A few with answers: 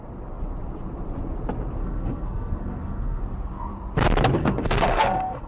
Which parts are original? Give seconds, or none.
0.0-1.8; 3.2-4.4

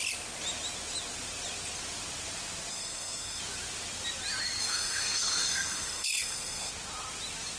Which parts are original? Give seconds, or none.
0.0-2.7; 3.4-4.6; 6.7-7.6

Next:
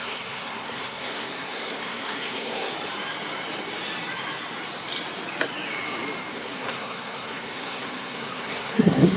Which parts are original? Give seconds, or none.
2.7-6.3

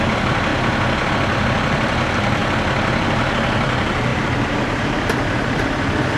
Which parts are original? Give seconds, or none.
0.5-1.1; 2.4-3.2

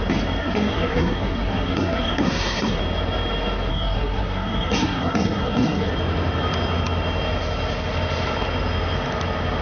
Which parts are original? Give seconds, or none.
0.0-0.4; 2.8-3.7; 5.9-9.6

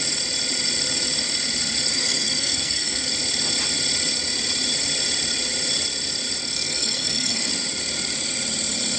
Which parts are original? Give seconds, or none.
0.0-1.9; 3.1-6.4; 7.5-9.0

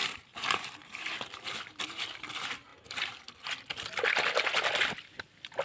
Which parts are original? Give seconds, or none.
0.0-5.6